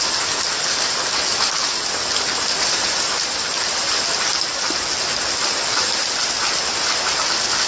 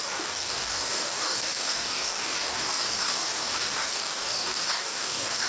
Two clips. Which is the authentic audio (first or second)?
first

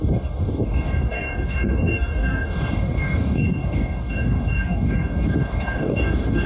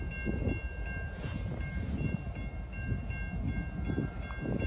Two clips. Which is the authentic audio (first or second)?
second